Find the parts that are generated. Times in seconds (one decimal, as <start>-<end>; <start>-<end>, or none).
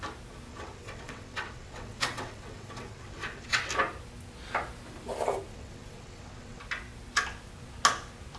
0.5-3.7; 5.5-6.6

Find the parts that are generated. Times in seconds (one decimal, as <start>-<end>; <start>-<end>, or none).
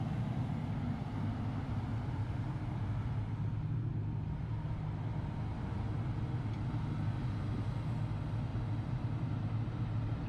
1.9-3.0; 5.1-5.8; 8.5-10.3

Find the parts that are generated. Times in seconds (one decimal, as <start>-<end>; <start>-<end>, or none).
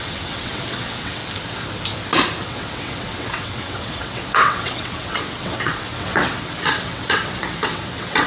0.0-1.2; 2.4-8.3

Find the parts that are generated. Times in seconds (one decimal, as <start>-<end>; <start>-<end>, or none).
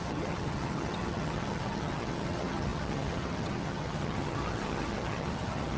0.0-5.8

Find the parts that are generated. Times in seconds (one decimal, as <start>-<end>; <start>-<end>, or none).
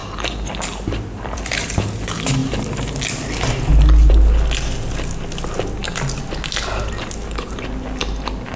0.0-1.8; 2.4-4.1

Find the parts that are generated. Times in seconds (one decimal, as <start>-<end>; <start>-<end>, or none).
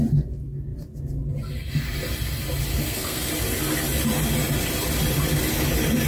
2.7-3.3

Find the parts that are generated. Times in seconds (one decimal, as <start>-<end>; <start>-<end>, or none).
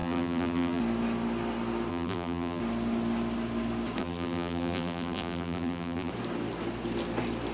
0.0-0.8; 1.9-2.6; 4.0-6.1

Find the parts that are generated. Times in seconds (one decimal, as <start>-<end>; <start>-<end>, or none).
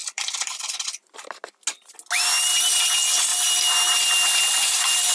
0.0-0.6